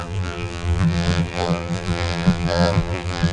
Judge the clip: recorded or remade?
remade